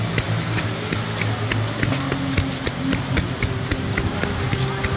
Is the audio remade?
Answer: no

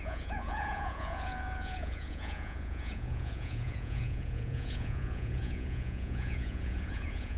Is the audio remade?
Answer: yes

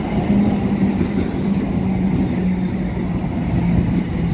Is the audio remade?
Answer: no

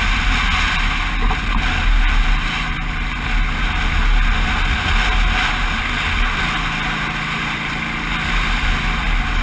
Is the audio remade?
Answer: no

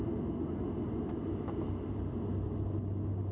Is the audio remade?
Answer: no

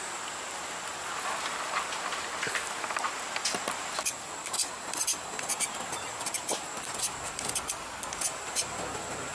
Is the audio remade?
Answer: no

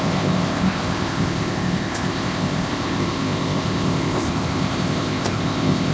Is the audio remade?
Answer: yes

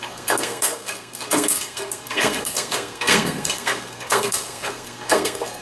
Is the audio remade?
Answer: yes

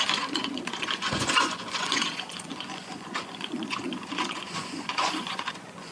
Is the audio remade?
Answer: yes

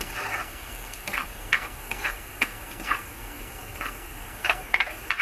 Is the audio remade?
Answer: yes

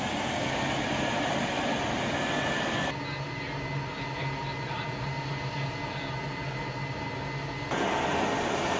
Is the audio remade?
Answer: no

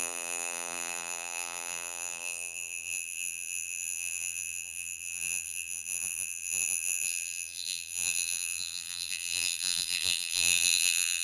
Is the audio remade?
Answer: yes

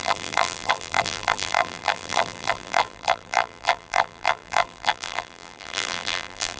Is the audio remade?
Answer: yes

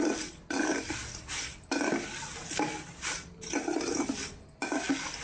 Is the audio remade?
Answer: no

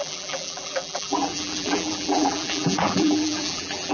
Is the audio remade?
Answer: yes